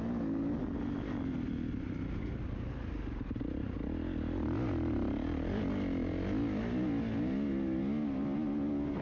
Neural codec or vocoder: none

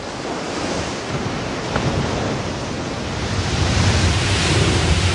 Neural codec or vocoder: none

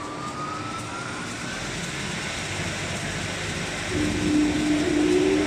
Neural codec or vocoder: none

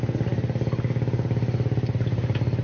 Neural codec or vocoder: none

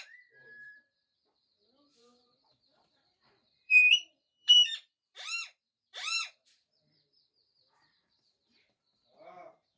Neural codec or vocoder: vocoder, BigVGAN v2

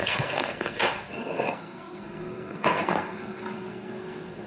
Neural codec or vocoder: codec, SNAC